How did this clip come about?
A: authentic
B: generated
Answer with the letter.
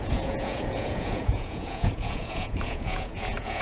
B